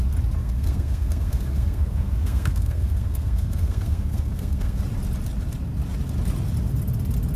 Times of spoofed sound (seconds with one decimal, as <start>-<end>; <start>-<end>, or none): 0.4-4.8